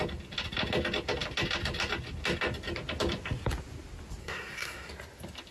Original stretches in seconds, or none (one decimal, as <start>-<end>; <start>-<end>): 0.0-4.2; 4.9-5.5